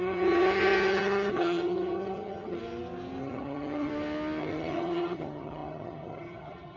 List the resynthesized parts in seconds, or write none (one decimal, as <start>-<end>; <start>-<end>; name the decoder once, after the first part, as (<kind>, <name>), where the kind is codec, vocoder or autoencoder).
0.0-2.6 (vocoder, HiFi-GAN); 3.2-3.9; 4.4-6.8